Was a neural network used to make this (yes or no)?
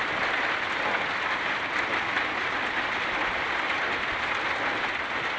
no